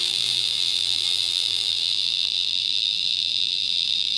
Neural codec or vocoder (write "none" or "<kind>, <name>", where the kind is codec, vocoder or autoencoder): vocoder, BigVGAN v2